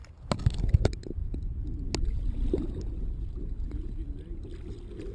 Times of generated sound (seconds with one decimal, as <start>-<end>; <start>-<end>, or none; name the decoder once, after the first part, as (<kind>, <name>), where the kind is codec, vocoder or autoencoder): none